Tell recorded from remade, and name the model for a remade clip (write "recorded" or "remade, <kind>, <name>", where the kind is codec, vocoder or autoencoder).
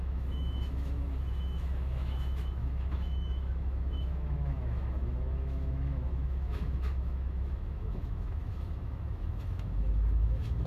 remade, autoencoder, DAC-VAE